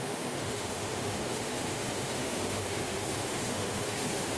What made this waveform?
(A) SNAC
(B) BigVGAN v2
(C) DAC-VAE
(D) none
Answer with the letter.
C